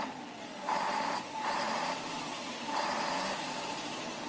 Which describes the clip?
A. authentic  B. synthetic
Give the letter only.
A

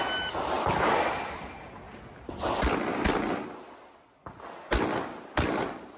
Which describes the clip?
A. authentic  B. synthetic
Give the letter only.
A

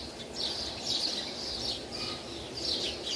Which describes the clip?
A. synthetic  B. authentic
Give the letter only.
B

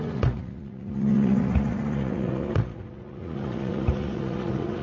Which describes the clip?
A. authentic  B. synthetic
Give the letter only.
B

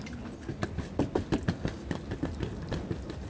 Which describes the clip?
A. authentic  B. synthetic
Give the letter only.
A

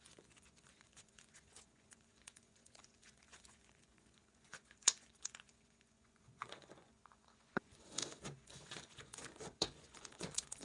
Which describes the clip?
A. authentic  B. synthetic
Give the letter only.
B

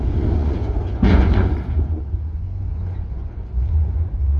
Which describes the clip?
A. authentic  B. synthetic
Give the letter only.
B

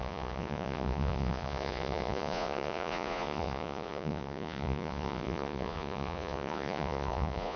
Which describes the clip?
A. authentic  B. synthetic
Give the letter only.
B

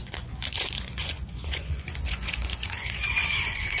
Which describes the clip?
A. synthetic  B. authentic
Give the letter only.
A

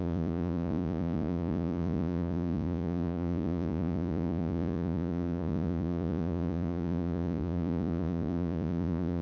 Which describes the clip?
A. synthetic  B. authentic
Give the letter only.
A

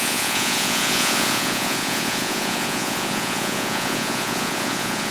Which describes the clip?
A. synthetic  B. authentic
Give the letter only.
A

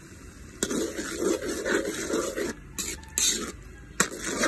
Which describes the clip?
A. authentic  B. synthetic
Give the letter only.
A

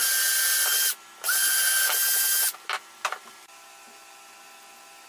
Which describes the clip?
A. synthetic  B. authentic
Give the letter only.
B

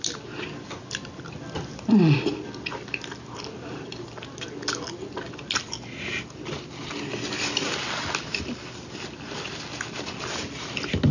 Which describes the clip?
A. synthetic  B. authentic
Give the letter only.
B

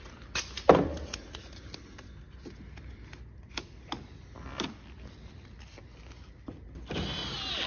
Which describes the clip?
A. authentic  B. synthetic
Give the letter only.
A